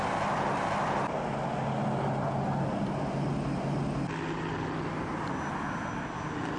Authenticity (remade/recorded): recorded